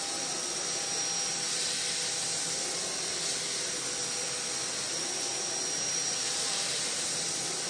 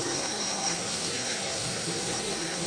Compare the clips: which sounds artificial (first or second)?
second